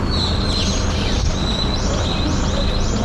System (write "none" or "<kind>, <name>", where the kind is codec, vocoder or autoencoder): none